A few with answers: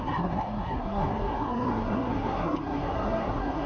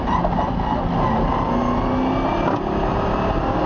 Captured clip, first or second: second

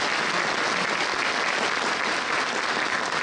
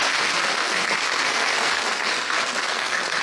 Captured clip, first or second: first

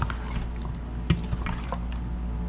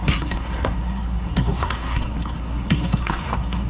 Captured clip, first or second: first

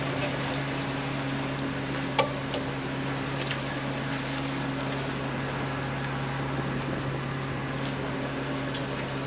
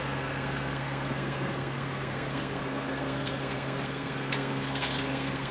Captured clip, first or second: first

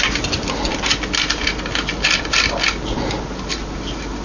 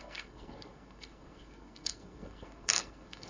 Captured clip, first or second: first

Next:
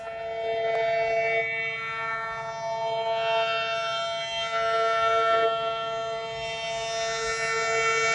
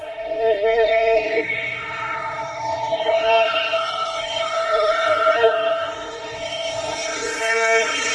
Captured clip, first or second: first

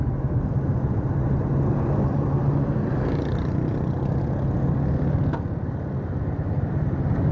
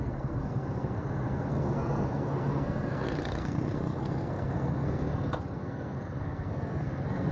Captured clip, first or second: first